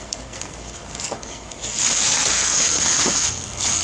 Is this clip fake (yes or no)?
yes